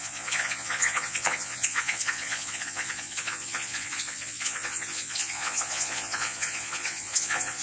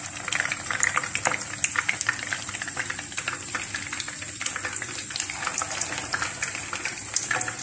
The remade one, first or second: first